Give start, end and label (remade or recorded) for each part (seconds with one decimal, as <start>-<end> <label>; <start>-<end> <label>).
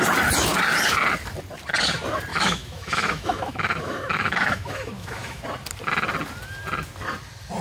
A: 0.0-2.3 recorded; 2.3-5.4 remade; 5.4-7.6 recorded